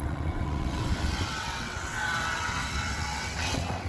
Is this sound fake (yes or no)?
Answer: yes